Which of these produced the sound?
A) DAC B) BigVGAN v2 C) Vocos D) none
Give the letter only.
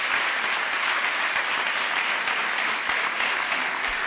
D